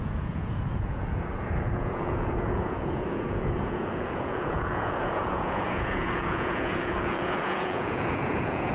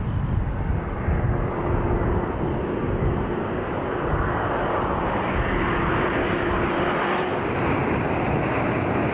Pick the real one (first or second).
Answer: second